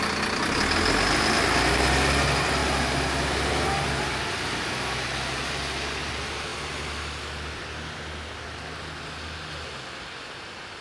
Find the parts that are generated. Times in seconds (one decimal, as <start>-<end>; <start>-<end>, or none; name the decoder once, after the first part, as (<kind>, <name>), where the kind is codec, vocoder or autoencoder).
none